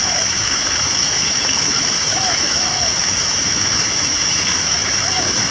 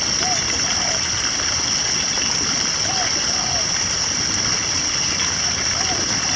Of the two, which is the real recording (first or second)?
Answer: second